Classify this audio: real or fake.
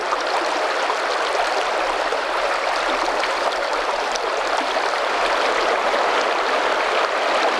real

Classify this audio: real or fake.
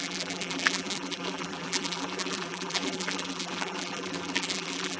fake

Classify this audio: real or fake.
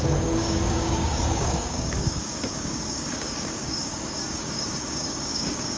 fake